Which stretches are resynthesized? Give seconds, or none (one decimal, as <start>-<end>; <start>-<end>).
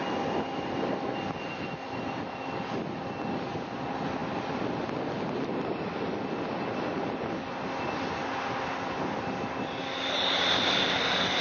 none